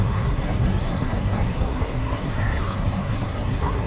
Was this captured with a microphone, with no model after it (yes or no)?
no